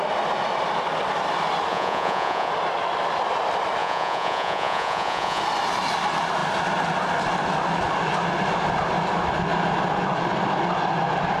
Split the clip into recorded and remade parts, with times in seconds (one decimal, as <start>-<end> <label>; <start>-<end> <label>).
0.0-1.7 recorded; 1.7-2.5 remade; 2.5-3.8 recorded; 3.8-5.4 remade; 5.4-11.4 recorded